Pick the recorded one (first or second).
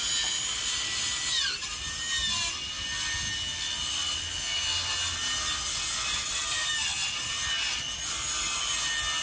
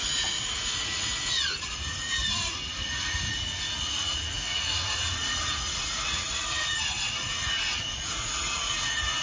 first